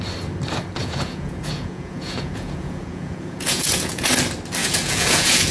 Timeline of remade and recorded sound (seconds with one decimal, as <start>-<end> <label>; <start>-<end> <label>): 0.0-0.8 recorded; 0.8-4.1 remade; 4.1-4.6 recorded; 4.6-5.5 remade